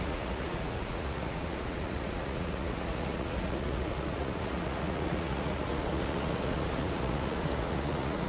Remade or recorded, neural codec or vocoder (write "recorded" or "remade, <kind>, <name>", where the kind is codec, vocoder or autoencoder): remade, vocoder, Vocos